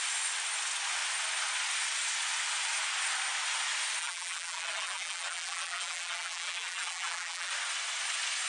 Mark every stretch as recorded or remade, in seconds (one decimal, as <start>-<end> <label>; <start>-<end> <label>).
0.0-4.0 recorded; 4.0-7.5 remade; 7.5-8.5 recorded